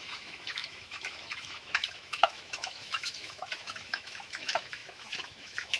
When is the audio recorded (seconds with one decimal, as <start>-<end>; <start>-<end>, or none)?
none